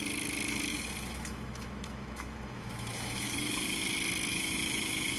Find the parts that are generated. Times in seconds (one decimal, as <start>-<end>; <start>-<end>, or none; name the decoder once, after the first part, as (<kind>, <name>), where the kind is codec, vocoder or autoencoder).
0.7-3.8 (autoencoder, DAC-VAE); 4.3-5.2